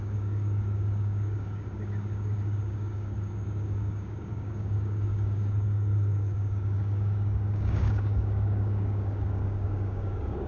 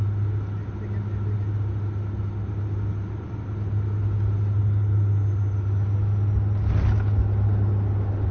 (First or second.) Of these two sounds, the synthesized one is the first